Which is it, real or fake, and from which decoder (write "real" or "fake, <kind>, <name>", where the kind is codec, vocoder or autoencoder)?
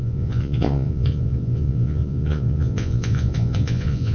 fake, vocoder, Vocos